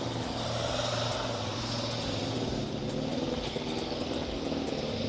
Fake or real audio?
real